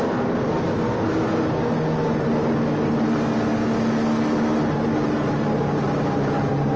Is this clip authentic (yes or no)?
yes